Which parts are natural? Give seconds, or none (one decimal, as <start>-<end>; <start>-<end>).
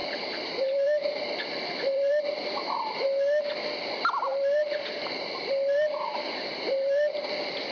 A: 2.1-4.3; 7.2-7.7